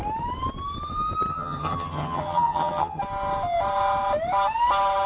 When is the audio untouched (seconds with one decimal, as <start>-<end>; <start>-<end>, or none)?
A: 0.0-1.3; 3.0-5.1